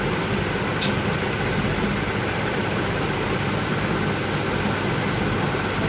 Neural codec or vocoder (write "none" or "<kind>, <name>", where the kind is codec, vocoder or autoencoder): none